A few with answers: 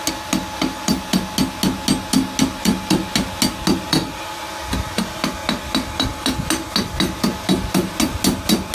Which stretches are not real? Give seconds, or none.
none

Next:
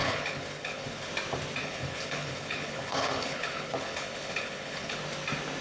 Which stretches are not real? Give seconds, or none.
0.0-1.1 (codec, HILCodec); 1.6-5.0

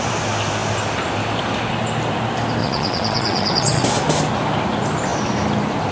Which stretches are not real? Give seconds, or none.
2.6-3.8 (vocoder, Vocos)

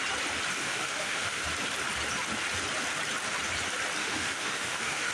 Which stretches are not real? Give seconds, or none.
0.6-1.4 (autoencoder, DAC-VAE); 4.0-5.1